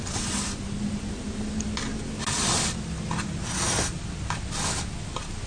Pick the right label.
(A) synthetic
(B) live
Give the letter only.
B